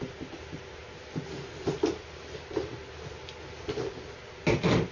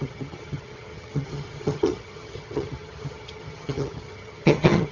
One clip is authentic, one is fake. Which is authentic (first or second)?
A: first